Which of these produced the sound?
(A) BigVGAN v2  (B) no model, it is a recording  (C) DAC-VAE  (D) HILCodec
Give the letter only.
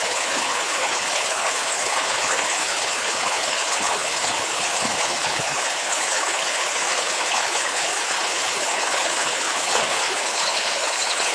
D